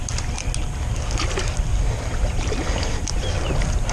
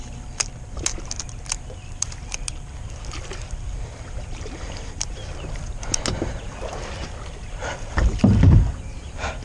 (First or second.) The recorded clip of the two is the first